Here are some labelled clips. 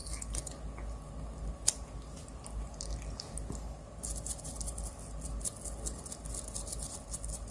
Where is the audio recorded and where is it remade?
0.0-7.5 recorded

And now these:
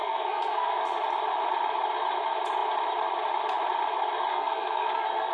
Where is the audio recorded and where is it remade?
0.0-0.8 remade; 0.8-4.3 recorded; 4.3-5.3 remade

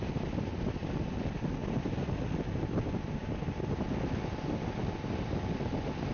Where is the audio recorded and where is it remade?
0.0-6.1 recorded